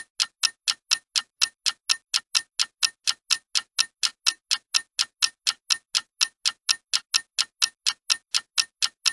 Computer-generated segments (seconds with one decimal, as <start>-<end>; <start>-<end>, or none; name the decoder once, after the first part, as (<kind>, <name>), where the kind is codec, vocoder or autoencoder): none